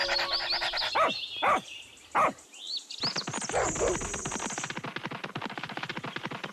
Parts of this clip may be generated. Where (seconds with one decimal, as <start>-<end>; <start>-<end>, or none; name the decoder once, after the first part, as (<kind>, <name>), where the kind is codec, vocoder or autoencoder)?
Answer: none